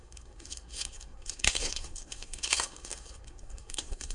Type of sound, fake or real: fake